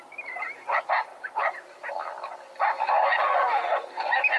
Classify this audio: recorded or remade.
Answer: recorded